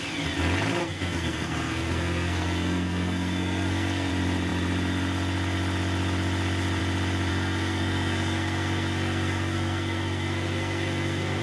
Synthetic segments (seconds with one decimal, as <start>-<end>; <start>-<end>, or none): 0.8-4.1; 7.3-11.4